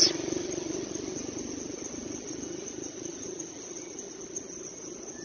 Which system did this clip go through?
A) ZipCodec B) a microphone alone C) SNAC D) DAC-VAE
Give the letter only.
B